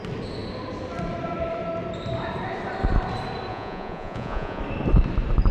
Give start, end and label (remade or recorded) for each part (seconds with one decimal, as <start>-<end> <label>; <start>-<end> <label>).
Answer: 0.0-3.5 recorded; 3.5-4.6 remade; 4.6-5.5 recorded

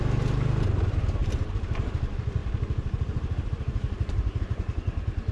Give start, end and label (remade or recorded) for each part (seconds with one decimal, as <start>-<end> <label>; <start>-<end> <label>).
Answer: 0.0-1.2 recorded; 1.2-1.9 remade; 1.9-2.4 recorded; 2.4-4.4 remade; 4.4-5.3 recorded

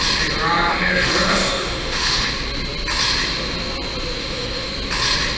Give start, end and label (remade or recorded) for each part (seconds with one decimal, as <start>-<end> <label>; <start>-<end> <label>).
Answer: 0.0-0.7 recorded; 0.7-2.3 remade; 2.3-4.2 recorded; 4.2-4.7 remade; 4.7-5.4 recorded

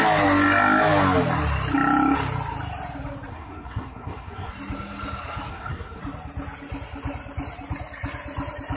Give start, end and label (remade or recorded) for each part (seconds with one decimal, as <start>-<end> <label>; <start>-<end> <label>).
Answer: 0.0-3.3 recorded; 3.3-4.5 remade; 4.5-5.5 recorded; 5.5-6.0 remade; 6.0-8.8 recorded

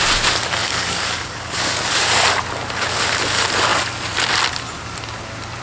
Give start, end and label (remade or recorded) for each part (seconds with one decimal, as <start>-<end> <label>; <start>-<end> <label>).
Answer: 0.0-0.6 recorded; 0.6-2.2 remade; 2.2-5.6 recorded

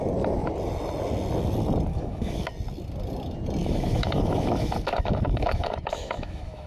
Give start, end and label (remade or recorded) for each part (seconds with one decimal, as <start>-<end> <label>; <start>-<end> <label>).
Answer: 0.0-1.9 recorded; 1.9-2.5 remade; 2.5-3.6 recorded; 3.6-6.7 remade

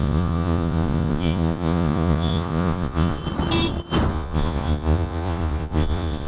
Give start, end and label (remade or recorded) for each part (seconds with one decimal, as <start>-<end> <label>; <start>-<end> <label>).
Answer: 0.0-3.2 remade; 3.2-4.1 recorded; 4.1-6.3 remade

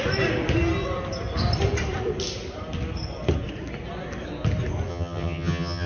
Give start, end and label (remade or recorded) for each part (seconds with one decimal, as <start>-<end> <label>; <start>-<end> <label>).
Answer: 0.0-4.9 recorded; 4.9-5.9 remade